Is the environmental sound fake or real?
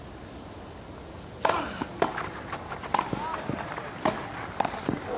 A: real